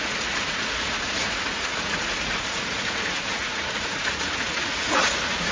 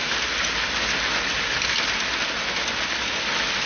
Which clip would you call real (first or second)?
second